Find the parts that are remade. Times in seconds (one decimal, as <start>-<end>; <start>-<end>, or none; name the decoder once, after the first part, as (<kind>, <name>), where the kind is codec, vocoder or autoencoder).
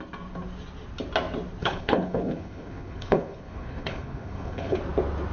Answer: 1.6-4.8 (codec, HILCodec)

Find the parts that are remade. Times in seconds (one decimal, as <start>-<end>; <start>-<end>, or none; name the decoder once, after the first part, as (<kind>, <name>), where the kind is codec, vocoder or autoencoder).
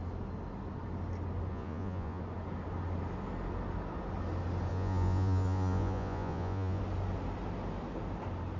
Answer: 1.5-2.2 (vocoder, Vocos); 4.7-6.8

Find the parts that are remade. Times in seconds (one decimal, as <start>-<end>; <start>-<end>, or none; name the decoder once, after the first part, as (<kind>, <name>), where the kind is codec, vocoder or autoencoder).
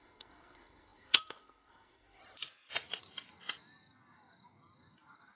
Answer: 0.0-2.2 (codec, SNAC)